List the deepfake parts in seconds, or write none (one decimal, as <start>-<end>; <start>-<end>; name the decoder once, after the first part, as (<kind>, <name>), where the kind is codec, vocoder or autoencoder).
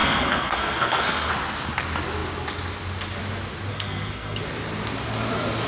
0.0-1.3 (codec, SNAC); 3.7-4.4